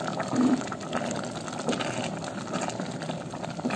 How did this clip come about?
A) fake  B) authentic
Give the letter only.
B